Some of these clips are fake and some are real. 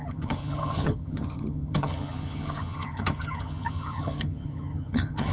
fake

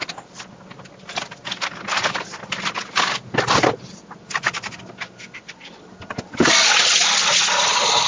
real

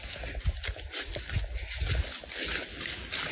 real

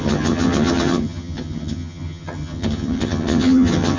fake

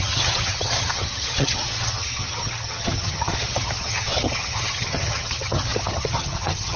fake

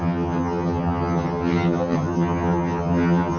fake